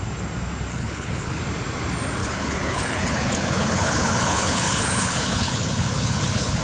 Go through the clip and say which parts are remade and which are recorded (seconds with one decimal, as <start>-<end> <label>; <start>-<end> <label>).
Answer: 0.0-0.7 recorded; 0.7-1.4 remade; 1.4-2.2 recorded; 2.2-6.6 remade